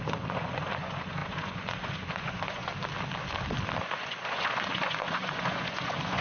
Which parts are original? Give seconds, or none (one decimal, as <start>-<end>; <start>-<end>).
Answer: 2.7-3.8